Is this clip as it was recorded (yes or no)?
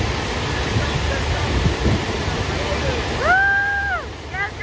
yes